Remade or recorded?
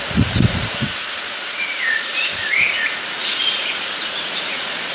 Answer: remade